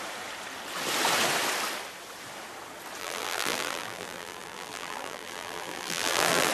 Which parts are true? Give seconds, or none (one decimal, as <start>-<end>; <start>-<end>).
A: 0.0-3.0